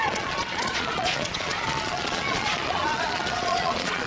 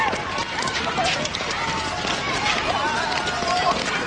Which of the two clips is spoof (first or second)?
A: first